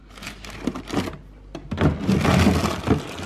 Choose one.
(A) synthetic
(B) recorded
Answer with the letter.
B